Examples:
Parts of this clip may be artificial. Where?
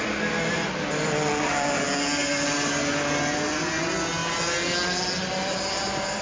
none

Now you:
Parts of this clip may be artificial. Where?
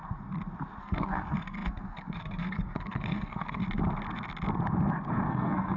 0.8-3.6 (codec, SNAC); 5.3-5.8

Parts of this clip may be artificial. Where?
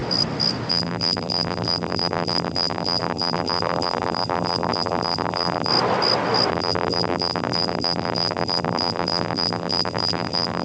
0.7-5.7 (vocoder, BigVGAN v2); 6.5-10.6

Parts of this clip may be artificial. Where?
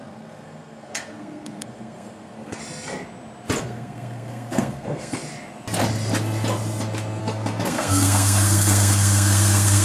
0.0-2.6 (codec, SNAC); 3.6-5.2; 7.2-9.8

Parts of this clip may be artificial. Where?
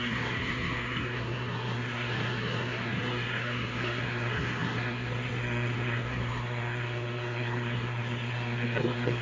0.0-9.2 (codec, SNAC)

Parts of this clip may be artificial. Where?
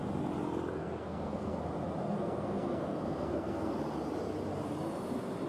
0.8-1.6 (codec, SNAC); 2.0-3.7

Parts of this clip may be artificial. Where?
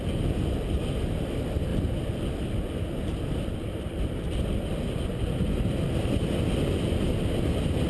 none